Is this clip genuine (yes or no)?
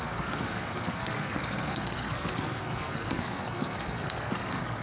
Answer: no